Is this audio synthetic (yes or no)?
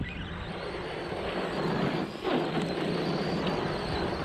no